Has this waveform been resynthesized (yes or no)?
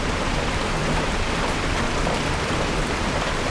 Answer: yes